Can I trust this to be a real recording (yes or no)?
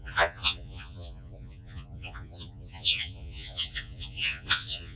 no